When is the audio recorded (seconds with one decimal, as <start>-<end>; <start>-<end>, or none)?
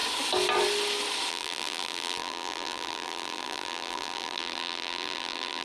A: 0.0-1.3